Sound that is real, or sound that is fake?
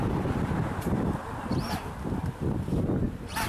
real